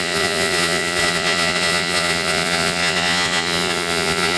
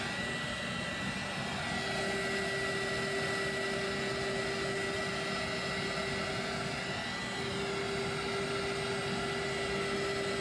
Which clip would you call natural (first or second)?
second